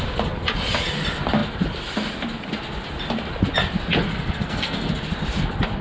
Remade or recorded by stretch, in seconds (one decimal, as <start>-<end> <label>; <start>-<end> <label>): 0.0-4.1 recorded; 4.1-4.9 remade; 4.9-5.8 recorded